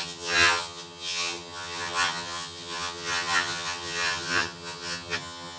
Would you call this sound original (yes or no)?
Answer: no